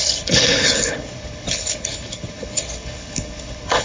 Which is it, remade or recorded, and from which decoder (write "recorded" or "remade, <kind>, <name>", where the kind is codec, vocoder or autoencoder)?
remade, codec, HILCodec